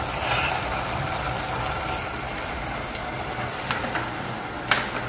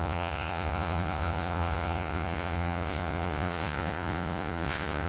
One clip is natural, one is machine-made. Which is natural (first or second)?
first